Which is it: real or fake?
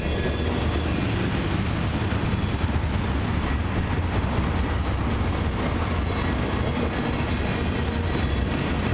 real